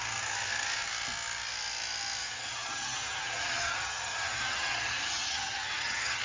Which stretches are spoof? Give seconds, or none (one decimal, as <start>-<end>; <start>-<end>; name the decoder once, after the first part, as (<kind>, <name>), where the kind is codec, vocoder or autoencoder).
2.2-6.2 (vocoder, HiFi-GAN)